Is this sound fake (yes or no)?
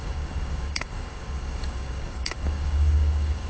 yes